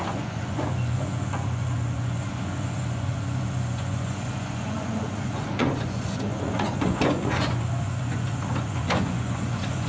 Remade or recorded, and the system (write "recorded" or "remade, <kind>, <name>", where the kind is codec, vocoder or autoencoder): remade, vocoder, Vocos